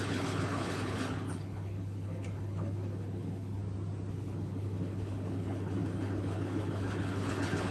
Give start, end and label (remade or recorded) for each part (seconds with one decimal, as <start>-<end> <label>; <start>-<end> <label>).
0.0-3.6 remade; 3.6-4.1 recorded; 4.1-7.7 remade